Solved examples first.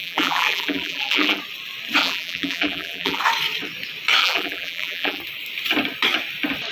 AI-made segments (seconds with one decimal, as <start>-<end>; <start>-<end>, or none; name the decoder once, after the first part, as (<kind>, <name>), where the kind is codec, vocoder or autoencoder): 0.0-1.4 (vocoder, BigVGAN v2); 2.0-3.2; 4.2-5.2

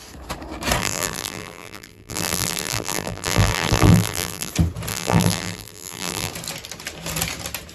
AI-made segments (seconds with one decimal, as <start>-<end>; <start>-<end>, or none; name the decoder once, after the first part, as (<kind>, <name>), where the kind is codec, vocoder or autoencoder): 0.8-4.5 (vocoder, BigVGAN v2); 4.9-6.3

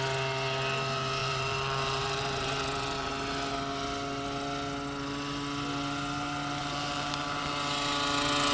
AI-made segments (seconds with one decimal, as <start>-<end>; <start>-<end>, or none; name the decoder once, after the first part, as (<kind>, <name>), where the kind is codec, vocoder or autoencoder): 1.2-3.1 (vocoder, BigVGAN v2); 6.6-7.5

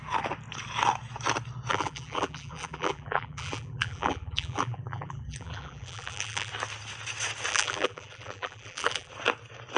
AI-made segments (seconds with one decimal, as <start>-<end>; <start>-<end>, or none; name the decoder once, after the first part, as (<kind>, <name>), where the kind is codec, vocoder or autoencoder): 1.7-6.5 (vocoder, BigVGAN v2); 7.5-9.1

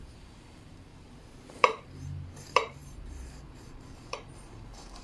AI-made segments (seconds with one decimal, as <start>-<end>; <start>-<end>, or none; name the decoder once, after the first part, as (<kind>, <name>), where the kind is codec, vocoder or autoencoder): 0.0-0.9 (vocoder, BigVGAN v2); 1.5-5.0